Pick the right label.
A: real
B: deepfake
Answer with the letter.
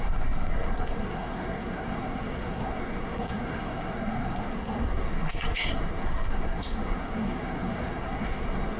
B